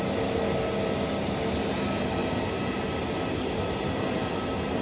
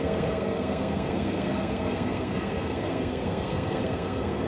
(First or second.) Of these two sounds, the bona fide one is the first